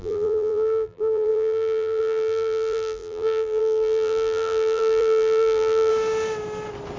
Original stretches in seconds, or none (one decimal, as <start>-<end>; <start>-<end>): 5.9-7.0